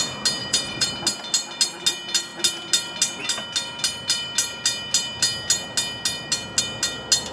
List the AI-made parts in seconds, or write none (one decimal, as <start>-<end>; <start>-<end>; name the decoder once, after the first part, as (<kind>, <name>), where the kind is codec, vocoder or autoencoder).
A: 0.4-0.9 (vocoder, BigVGAN v2)